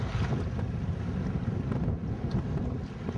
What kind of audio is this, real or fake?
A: real